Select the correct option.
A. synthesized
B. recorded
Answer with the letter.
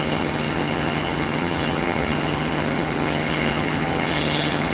A